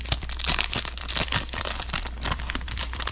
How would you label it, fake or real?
fake